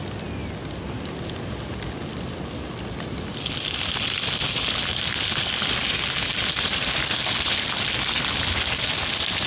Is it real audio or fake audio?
real